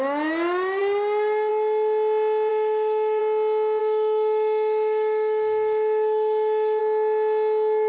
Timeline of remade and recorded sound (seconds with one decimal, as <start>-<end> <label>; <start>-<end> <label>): 0.0-2.5 recorded; 2.5-3.2 remade; 3.2-3.8 recorded; 3.8-6.8 remade; 6.8-7.9 recorded